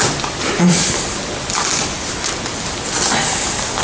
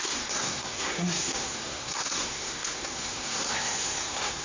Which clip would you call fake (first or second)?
second